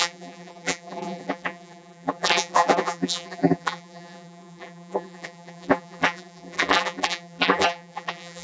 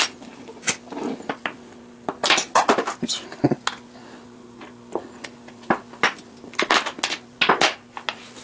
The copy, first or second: first